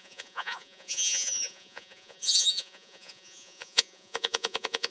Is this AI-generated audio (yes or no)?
yes